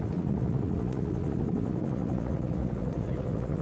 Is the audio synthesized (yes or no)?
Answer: yes